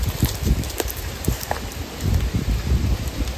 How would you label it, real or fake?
real